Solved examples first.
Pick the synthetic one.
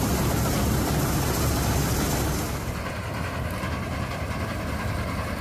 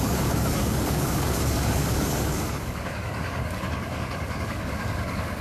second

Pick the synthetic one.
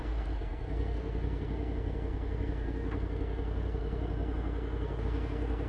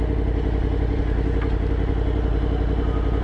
first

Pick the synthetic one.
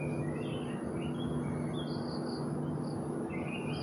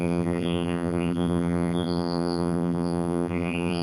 second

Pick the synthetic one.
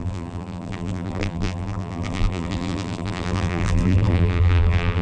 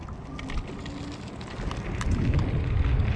first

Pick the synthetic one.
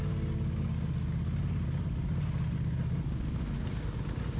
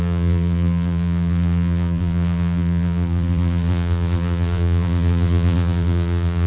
second